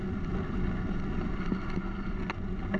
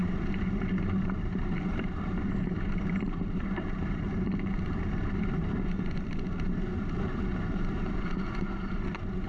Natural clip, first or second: first